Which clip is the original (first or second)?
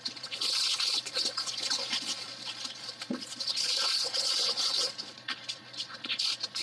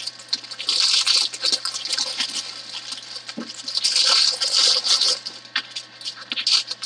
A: second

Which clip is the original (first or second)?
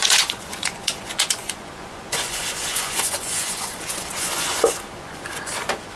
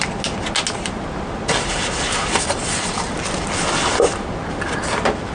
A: second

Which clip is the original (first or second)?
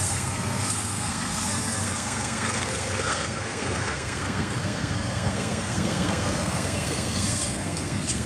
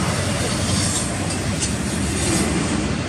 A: second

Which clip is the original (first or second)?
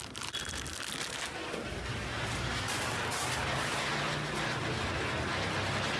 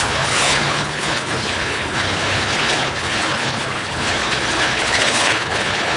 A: first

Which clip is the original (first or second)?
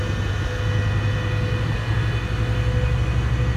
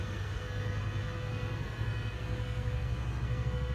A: first